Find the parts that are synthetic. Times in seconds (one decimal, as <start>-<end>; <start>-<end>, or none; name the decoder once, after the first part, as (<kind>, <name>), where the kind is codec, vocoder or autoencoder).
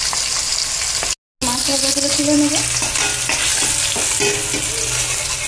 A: none